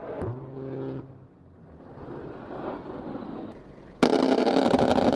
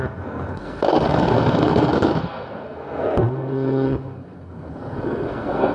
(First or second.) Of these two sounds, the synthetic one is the second